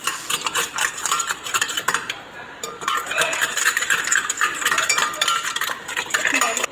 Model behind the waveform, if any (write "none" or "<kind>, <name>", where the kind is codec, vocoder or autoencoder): vocoder, BigVGAN v2